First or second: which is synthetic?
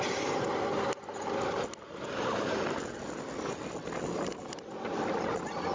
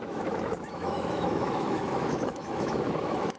second